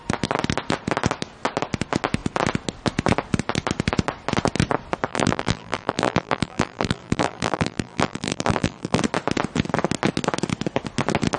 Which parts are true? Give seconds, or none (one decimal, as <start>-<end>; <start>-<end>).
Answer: 0.0-5.1; 9.0-11.4